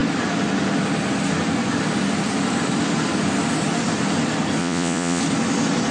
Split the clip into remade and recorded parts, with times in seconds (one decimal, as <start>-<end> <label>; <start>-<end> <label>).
0.0-4.6 recorded; 4.6-5.2 remade; 5.2-5.9 recorded